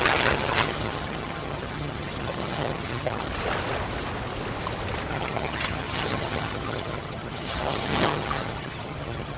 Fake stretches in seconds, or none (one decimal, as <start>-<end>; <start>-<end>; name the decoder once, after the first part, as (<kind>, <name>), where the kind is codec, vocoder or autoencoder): 0.0-3.3 (vocoder, HiFi-GAN); 5.1-9.4